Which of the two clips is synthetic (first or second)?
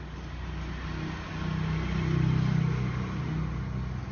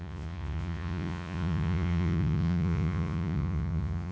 second